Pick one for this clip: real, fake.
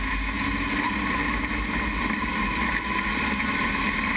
real